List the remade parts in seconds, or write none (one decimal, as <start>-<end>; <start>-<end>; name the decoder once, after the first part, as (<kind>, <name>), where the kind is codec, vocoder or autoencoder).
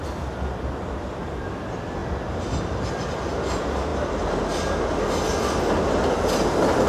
none